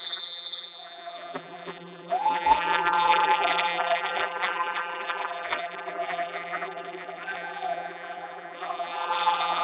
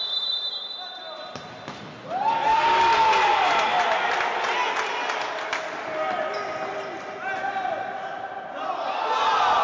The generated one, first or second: first